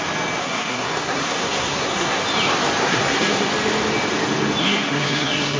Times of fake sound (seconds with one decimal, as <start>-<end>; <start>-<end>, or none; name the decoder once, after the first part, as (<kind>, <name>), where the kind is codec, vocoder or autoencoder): 0.4-2.2 (codec, SNAC); 2.8-3.5; 4.6-5.6